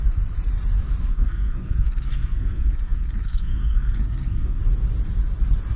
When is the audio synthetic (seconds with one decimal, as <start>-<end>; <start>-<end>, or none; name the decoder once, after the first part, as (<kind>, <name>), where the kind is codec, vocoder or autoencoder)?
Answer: 1.1-4.6 (codec, SNAC)